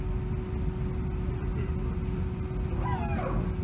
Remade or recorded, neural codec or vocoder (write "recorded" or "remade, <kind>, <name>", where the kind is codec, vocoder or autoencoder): recorded